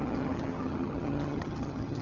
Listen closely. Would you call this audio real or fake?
fake